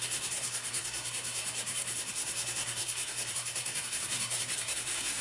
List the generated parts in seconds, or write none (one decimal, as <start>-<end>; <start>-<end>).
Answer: 0.0-5.2